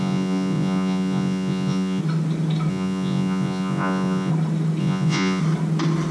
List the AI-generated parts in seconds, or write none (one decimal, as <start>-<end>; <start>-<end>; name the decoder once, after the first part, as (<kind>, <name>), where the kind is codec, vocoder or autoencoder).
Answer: 0.0-2.0 (vocoder, Vocos); 2.7-4.3; 4.8-5.4